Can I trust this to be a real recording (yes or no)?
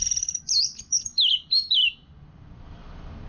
no